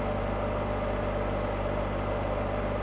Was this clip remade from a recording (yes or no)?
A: no